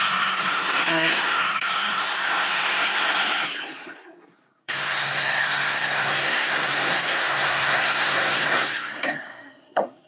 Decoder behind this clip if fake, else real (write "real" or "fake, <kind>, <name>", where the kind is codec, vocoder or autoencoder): fake, codec, SNAC